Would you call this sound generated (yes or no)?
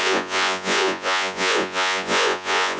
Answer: yes